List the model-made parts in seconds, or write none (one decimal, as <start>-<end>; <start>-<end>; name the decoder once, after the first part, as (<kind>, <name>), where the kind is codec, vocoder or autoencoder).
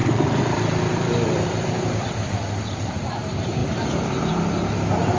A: 0.0-3.1 (vocoder, BigVGAN v2); 3.6-4.3